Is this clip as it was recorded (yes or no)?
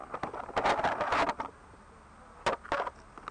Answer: yes